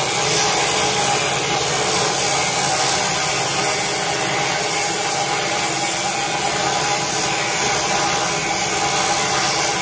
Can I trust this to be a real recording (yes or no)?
yes